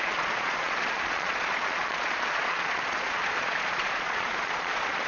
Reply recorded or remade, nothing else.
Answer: remade